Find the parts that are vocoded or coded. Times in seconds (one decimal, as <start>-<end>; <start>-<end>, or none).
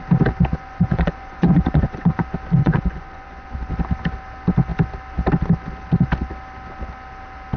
0.5-2.2; 2.6-3.7